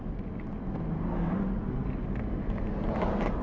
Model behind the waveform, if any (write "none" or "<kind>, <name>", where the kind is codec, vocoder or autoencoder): none